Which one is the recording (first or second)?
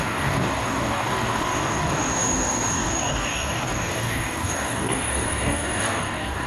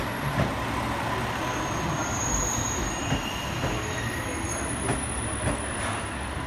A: second